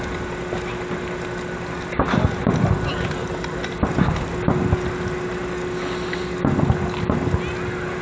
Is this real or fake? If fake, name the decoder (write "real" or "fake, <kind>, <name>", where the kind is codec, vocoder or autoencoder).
real